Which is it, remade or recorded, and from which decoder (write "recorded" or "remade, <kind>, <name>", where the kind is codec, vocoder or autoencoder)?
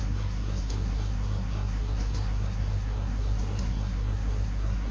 remade, codec, SNAC